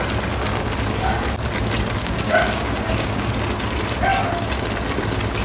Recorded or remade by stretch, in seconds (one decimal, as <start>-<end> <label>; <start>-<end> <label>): 0.0-2.0 recorded; 2.0-3.3 remade; 3.3-5.4 recorded